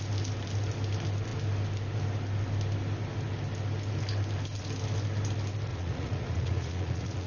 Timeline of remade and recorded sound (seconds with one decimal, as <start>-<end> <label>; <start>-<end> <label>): 0.0-5.7 recorded; 5.7-7.3 remade